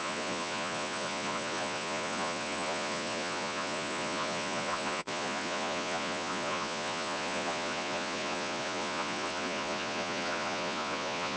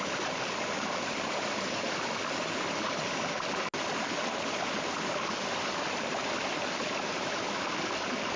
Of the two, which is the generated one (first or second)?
first